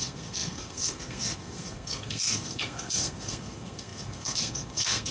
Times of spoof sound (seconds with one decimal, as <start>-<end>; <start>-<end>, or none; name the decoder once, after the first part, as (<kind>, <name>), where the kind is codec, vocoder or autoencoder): 0.0-5.1 (codec, SNAC)